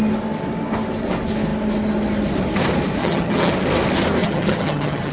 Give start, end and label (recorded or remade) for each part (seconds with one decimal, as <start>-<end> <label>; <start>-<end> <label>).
0.0-3.0 recorded; 3.0-3.5 remade; 3.5-4.2 recorded; 4.2-5.1 remade